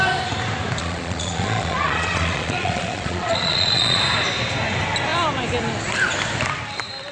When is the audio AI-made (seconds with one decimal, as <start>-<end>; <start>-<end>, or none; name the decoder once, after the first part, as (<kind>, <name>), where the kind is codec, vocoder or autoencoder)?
0.8-4.0 (vocoder, Vocos)